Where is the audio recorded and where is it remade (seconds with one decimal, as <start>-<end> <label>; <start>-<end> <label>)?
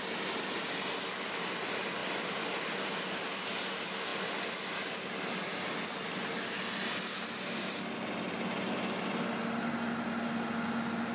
0.0-11.1 recorded